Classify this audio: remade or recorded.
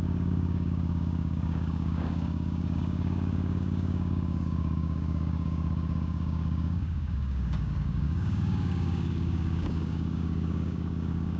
remade